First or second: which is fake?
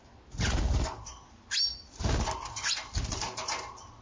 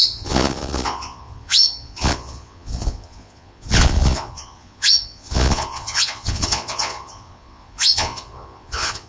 second